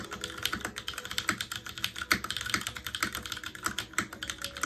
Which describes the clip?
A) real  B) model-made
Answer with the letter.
A